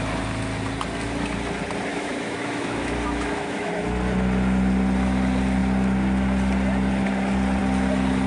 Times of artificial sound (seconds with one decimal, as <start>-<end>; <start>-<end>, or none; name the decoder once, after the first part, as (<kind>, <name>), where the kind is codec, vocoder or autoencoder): 1.9-3.7 (autoencoder, DAC-VAE)